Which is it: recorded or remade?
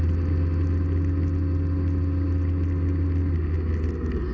recorded